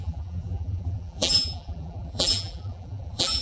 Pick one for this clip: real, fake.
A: fake